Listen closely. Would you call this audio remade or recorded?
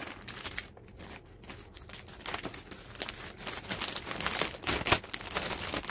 recorded